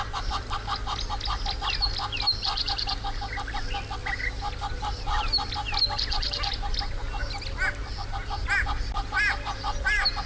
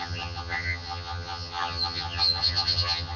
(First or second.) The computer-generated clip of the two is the second